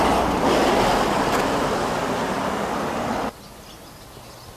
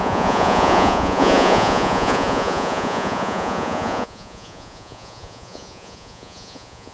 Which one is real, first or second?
first